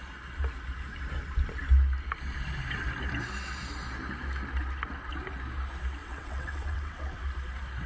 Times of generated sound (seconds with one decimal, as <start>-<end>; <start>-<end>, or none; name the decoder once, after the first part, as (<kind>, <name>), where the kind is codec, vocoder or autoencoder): 6.0-7.2 (vocoder, WaveNeXt)